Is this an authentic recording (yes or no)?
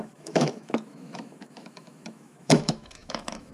no